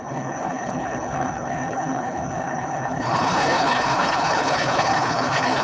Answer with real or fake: fake